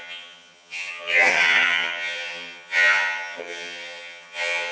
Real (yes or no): no